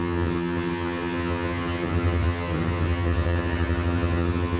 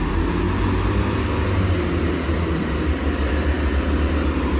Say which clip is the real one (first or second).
second